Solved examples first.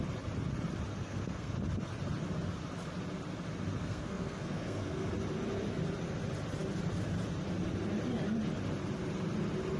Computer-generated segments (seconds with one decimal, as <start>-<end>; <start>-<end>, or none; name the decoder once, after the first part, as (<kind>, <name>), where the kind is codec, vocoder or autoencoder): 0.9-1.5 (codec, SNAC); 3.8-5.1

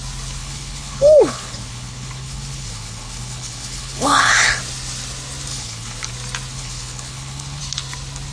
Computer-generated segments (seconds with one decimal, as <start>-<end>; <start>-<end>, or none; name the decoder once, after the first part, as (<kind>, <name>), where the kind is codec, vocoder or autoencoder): 0.4-4.6 (codec, HILCodec); 5.5-6.1; 6.5-7.6

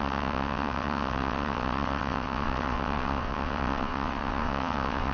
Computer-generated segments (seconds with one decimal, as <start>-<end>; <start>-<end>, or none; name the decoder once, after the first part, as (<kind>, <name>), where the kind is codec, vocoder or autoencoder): 0.0-5.1 (vocoder, WaveNeXt)